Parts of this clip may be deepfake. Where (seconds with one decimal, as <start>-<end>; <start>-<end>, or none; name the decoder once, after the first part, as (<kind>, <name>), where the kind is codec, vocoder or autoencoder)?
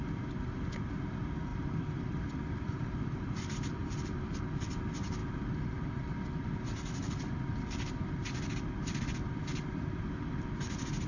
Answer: 1.5-4.4 (vocoder, BigVGAN v2)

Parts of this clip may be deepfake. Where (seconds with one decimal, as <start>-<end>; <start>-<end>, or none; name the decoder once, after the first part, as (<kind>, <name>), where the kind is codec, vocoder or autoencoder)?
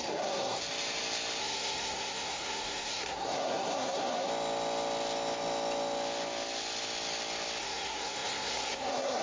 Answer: 0.0-0.6 (codec, SNAC); 1.4-4.3; 7.6-9.2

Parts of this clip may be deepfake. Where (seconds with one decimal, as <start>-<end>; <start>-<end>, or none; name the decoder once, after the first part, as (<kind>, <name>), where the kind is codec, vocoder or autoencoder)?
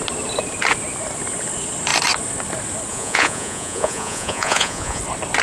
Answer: 2.9-5.0 (vocoder, Vocos)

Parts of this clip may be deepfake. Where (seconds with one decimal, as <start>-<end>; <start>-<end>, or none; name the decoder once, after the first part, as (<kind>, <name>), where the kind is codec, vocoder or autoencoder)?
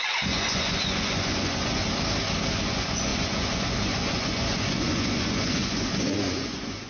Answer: 0.0-1.8 (vocoder, Vocos); 2.5-6.9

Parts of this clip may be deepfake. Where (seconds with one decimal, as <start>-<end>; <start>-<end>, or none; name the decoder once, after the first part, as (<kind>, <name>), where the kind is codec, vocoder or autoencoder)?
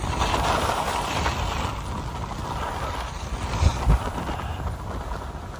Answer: none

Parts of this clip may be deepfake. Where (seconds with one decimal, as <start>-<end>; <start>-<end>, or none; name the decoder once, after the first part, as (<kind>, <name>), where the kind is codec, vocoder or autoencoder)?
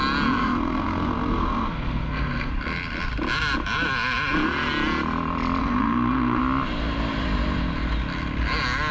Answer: 0.4-2.5 (codec, SNAC); 5.6-6.4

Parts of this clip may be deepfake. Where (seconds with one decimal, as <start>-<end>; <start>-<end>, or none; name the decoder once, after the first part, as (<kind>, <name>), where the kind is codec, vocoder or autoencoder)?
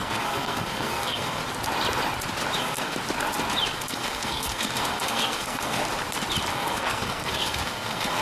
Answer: 0.0-1.4 (codec, SNAC); 2.6-3.0; 3.9-5.8; 6.5-8.2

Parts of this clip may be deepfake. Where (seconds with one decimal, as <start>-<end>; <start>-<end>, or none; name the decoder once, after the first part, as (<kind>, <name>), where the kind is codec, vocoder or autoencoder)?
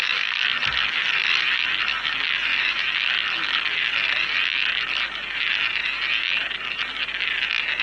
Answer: none